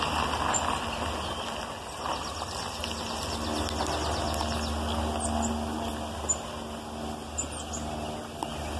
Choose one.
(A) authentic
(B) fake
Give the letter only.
A